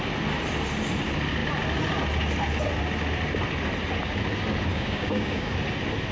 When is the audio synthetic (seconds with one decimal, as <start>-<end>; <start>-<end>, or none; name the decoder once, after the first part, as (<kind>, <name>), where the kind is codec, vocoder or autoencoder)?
4.7-5.5 (codec, DAC)